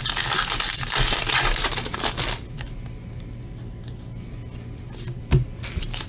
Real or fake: real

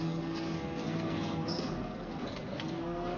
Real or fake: fake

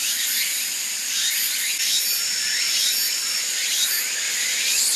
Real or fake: real